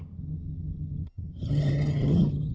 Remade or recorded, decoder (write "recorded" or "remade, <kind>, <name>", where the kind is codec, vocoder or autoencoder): remade, vocoder, HiFi-GAN